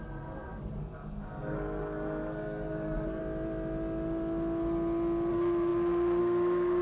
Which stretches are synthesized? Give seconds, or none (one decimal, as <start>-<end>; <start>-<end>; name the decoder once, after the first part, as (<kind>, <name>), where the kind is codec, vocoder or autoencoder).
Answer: 0.0-3.2 (codec, SNAC); 5.3-6.8